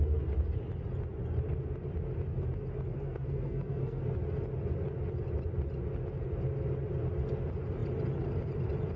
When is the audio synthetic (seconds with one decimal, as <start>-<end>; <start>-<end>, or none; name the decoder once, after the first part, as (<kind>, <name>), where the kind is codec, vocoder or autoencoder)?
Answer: 2.9-4.0 (codec, SNAC)